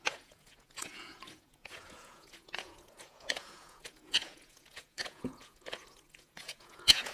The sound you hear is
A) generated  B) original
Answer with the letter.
A